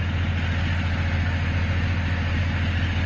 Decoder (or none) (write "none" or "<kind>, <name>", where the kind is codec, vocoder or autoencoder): none